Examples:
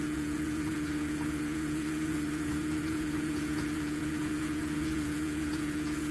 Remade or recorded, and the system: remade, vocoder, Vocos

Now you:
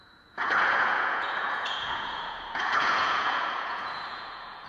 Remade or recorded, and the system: remade, vocoder, Vocos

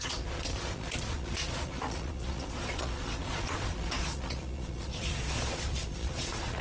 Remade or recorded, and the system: remade, vocoder, Vocos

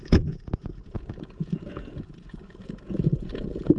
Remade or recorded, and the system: remade, vocoder, Vocos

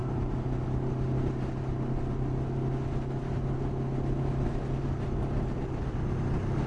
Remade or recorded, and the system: recorded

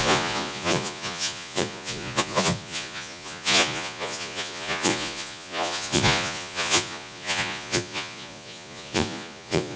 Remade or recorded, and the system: remade, vocoder, Vocos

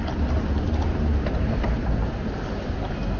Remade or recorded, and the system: recorded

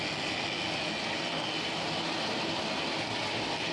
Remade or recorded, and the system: recorded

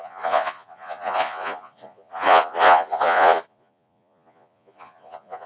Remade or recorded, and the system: remade, vocoder, Vocos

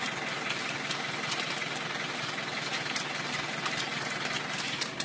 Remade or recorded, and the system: recorded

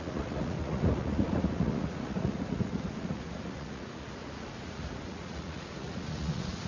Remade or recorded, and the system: remade, vocoder, Vocos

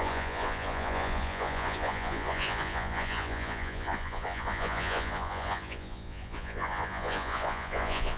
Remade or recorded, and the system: remade, vocoder, Vocos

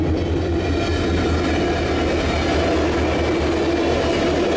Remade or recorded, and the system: recorded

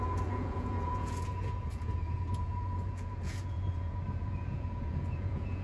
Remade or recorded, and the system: remade, vocoder, Vocos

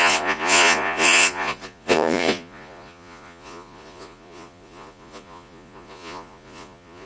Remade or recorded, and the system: remade, vocoder, Vocos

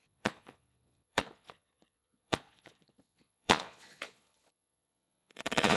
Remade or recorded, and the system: remade, vocoder, Vocos